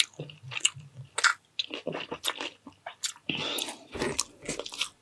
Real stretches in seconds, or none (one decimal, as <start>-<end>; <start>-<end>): 0.0-5.0